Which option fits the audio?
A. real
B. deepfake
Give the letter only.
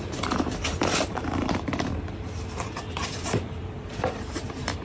B